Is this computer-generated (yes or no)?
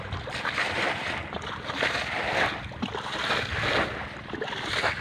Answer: no